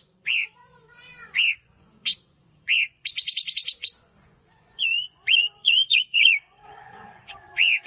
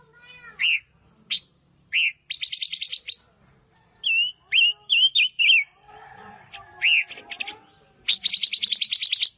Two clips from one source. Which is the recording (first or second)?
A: second